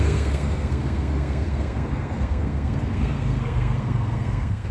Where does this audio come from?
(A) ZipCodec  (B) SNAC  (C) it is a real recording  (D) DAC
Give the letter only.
B